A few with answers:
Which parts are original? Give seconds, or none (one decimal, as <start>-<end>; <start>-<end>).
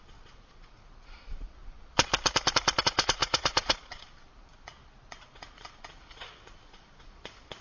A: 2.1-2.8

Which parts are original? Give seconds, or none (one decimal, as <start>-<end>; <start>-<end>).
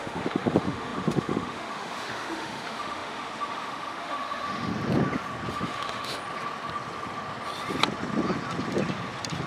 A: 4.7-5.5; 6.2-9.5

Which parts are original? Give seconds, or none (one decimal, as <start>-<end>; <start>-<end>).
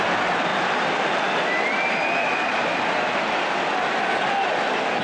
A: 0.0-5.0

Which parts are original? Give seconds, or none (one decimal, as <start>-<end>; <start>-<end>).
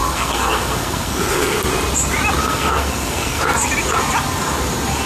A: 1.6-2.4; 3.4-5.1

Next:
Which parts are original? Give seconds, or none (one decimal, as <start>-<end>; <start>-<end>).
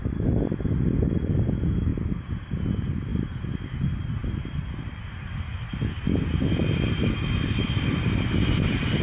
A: 0.0-9.0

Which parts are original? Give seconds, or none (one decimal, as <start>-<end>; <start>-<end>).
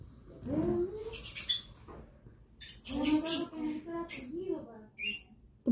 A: 0.0-5.7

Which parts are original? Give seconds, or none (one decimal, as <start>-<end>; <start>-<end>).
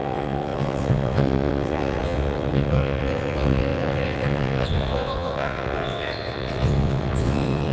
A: none